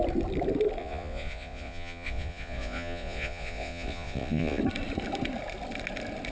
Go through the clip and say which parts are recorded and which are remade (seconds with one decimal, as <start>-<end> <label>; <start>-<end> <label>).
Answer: 0.0-0.8 recorded; 0.8-4.6 remade; 4.6-6.3 recorded